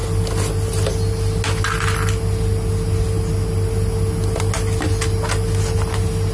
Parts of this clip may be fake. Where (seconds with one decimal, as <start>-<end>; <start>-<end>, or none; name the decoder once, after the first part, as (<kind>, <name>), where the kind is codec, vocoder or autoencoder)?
none